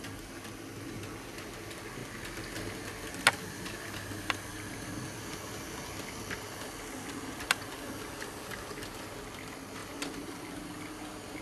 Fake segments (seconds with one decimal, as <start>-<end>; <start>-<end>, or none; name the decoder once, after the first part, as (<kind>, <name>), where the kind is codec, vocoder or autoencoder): none